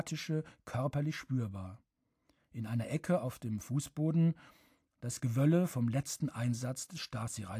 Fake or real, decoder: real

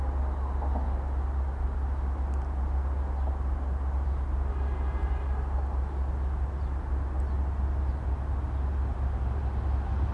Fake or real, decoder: real